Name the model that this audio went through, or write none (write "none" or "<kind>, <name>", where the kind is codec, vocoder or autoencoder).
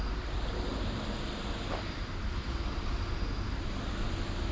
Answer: vocoder, BigVGAN v2